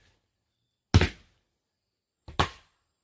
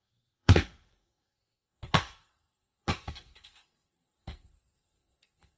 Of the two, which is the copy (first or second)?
second